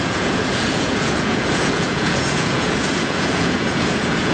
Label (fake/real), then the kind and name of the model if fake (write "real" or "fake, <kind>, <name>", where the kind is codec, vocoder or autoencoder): fake, vocoder, Vocos